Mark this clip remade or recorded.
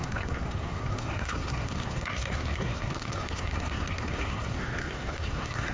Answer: remade